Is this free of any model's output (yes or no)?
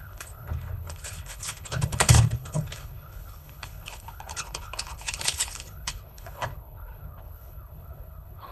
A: no